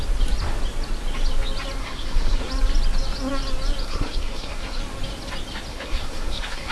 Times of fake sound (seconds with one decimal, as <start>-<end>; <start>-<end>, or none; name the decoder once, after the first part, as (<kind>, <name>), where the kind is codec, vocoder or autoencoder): 1.8-2.5 (codec, SNAC); 3.8-4.8; 5.7-6.7